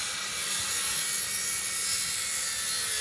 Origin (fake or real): real